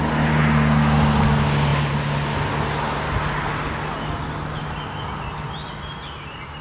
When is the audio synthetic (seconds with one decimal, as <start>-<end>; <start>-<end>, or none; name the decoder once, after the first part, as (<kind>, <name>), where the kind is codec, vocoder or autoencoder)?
none